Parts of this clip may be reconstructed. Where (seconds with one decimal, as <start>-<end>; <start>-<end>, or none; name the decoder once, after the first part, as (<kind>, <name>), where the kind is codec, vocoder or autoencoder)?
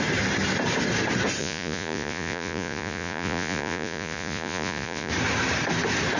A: 1.4-5.1 (vocoder, Vocos)